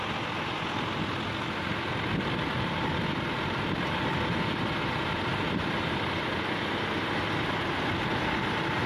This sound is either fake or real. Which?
real